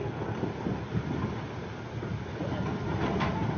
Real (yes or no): yes